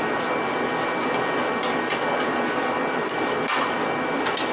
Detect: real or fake real